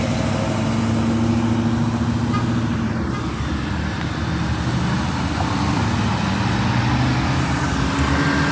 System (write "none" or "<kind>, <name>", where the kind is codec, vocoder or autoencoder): none